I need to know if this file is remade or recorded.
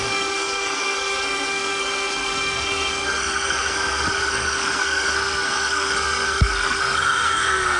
remade